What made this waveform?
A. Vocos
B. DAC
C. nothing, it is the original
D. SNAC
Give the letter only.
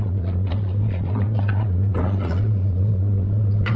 A